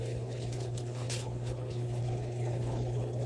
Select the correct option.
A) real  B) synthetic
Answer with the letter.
B